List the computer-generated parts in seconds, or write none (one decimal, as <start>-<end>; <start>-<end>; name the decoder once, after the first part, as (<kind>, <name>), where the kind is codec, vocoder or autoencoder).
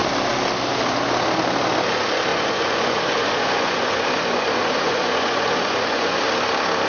2.3-6.2 (vocoder, Vocos)